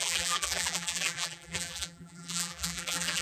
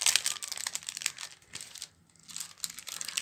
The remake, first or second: first